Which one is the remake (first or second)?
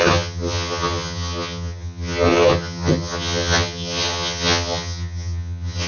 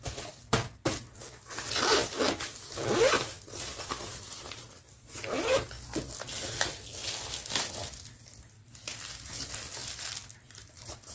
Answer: first